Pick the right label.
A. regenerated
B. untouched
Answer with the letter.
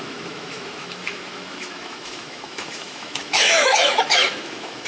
A